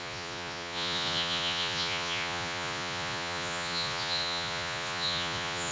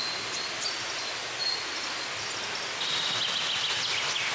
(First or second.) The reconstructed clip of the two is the first